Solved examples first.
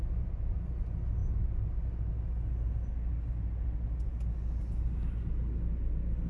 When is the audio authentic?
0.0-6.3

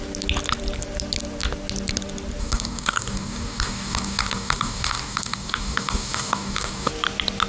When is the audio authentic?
0.0-2.4; 6.9-7.5